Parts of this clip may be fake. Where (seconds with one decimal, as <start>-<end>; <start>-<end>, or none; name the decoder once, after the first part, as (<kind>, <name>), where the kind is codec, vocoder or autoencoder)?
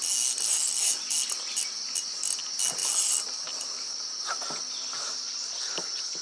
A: none